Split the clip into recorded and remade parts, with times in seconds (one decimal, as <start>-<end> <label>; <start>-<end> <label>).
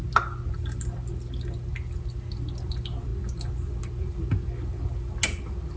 0.0-5.8 recorded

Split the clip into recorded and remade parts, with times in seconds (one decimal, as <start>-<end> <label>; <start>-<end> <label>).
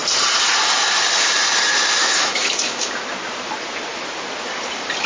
0.0-2.0 recorded; 2.0-2.9 remade; 2.9-5.1 recorded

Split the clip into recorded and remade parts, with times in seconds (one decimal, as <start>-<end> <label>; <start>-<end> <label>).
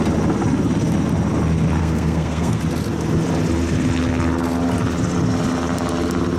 0.0-1.8 recorded; 1.8-2.6 remade; 2.6-6.4 recorded